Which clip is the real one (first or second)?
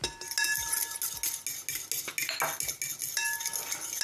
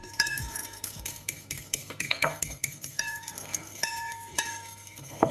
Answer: first